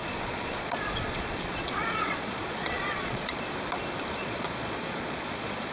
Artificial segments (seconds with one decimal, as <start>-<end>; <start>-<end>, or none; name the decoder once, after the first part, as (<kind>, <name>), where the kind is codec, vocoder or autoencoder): 0.0-3.4 (vocoder, Vocos); 4.2-5.7